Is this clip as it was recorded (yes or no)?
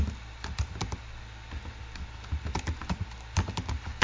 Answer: yes